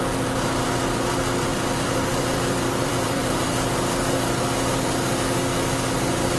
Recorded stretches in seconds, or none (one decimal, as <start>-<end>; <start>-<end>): 0.0-1.5; 3.8-6.4